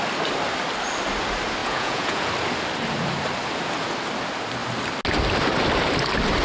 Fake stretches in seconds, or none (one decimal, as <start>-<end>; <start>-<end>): 1.6-2.3